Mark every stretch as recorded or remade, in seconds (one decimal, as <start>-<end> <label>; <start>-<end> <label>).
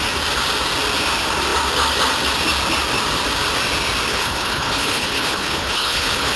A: 0.0-4.1 recorded; 4.1-6.4 remade